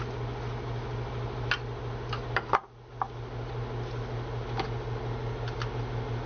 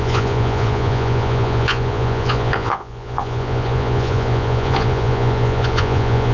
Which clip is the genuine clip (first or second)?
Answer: first